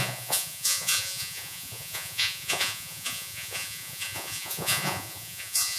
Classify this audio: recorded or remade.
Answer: remade